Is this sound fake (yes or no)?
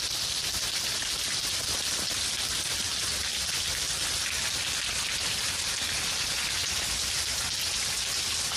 no